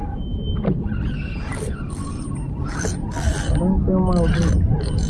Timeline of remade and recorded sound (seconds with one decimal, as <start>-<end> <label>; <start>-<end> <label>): 0.0-5.1 recorded

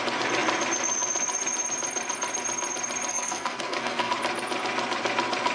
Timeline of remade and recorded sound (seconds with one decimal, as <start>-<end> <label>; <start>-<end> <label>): 0.0-3.1 recorded; 3.1-4.1 remade; 4.1-5.5 recorded

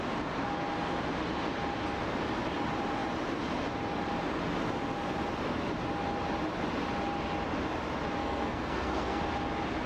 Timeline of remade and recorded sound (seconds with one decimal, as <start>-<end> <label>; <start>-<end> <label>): 0.0-8.2 recorded; 8.2-9.2 remade; 9.2-9.9 recorded

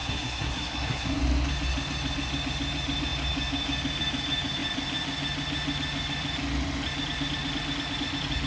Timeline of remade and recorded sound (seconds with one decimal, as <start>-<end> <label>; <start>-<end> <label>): 0.0-1.2 remade; 1.2-8.5 recorded